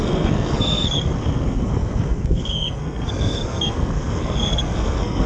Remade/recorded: remade